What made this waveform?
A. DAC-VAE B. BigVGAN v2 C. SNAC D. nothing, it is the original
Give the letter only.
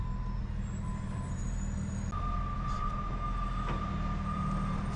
D